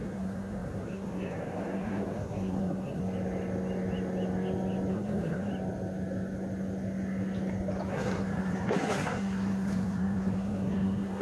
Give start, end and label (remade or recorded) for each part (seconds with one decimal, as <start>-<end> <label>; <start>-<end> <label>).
0.0-3.0 remade; 3.0-4.9 recorded; 4.9-5.5 remade; 5.5-7.9 recorded; 7.9-11.2 remade